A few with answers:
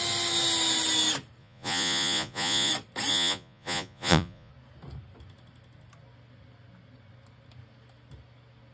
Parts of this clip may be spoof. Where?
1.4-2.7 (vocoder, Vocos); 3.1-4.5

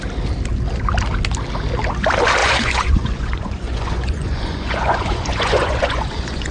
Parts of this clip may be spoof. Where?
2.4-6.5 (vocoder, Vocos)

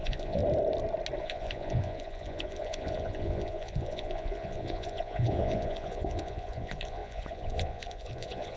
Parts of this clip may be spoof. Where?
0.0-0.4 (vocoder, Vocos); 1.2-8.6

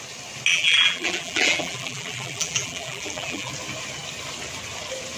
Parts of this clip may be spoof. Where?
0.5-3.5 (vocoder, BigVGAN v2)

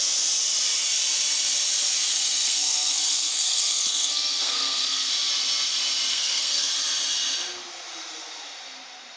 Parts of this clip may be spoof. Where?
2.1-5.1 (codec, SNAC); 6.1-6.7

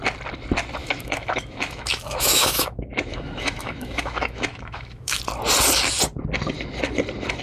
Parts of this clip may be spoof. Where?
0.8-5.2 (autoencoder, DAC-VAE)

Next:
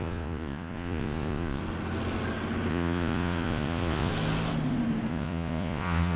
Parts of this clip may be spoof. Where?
0.0-1.6 (vocoder, Vocos); 2.7-4.1; 5.1-6.2

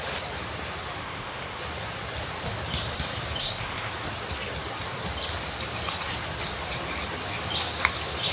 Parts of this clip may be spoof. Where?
1.0-1.6 (codec, ZipCodec); 3.4-3.9